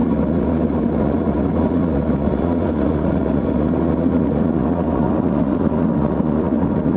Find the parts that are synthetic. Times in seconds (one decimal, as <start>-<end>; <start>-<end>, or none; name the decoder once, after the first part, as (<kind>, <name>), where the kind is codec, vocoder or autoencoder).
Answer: 0.0-7.0 (vocoder, Vocos)